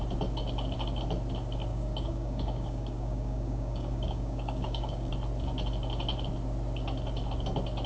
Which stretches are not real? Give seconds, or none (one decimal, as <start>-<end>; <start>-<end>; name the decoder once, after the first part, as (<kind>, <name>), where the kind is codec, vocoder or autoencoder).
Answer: 1.7-5.1 (codec, DAC)